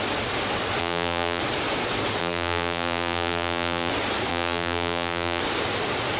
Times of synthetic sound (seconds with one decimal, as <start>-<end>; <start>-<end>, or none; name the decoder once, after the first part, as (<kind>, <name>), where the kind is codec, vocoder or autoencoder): 0.8-1.4 (vocoder, BigVGAN v2); 2.2-3.9; 4.3-5.4